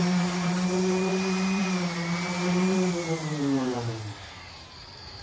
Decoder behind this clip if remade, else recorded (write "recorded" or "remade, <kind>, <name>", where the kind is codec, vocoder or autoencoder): remade, vocoder, BigVGAN v2